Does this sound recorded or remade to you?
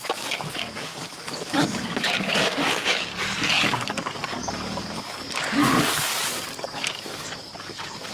remade